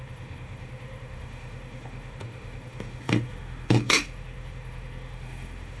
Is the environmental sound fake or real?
fake